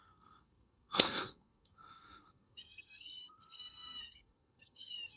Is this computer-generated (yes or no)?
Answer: yes